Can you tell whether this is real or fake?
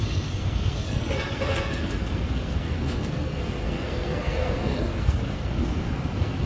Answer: fake